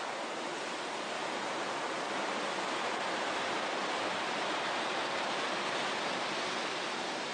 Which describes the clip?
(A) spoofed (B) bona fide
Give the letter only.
B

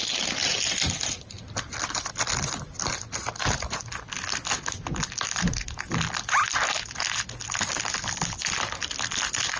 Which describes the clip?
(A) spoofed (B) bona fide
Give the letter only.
B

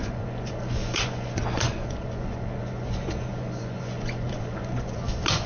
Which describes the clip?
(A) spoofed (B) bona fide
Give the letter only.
A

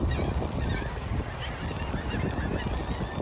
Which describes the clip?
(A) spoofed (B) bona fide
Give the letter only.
B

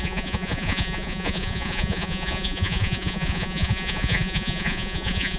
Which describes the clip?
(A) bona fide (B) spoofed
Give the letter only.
B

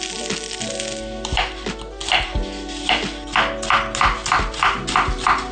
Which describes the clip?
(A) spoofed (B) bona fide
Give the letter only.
B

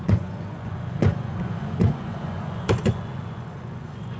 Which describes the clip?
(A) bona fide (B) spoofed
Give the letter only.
B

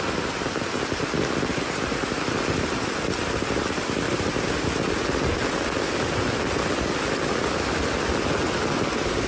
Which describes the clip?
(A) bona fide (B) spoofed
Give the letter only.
A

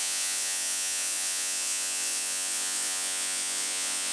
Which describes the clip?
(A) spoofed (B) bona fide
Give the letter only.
A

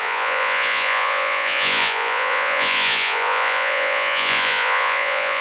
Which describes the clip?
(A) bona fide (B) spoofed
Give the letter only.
B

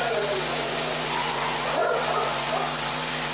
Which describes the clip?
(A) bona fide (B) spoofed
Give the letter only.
B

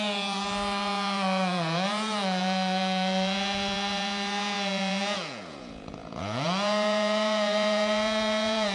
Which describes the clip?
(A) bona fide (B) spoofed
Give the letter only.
B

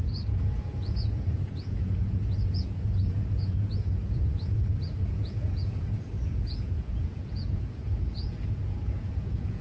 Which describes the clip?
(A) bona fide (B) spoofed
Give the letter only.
B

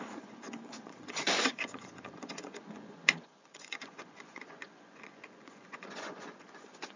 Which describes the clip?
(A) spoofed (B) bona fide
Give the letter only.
A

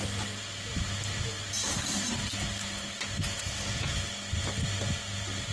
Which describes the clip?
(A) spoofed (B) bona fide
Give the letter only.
B